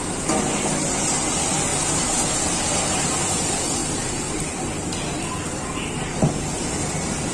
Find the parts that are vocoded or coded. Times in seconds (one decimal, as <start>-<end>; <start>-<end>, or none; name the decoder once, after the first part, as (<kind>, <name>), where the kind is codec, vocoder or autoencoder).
none